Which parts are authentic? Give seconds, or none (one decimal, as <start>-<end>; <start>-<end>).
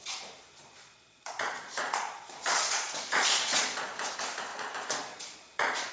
0.0-0.6; 4.1-4.5